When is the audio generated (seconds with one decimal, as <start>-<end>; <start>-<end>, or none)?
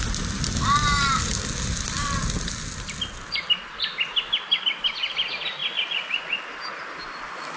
none